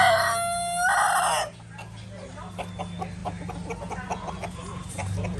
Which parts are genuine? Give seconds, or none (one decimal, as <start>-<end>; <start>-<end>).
0.0-5.4